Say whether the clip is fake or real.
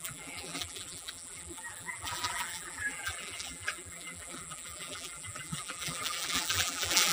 fake